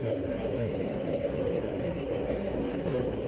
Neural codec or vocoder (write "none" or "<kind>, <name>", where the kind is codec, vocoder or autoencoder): codec, SNAC